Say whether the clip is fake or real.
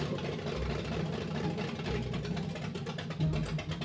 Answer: real